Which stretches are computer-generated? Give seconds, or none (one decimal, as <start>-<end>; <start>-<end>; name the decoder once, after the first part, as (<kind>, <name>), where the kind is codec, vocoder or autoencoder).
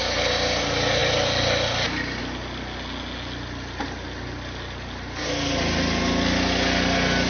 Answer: none